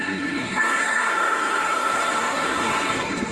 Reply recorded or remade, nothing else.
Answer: remade